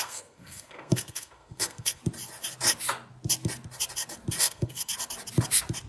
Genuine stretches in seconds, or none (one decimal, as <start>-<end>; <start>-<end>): 2.0-4.4; 4.9-5.9